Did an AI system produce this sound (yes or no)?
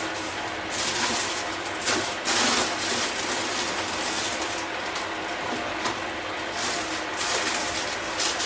no